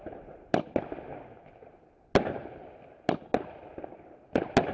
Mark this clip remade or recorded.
recorded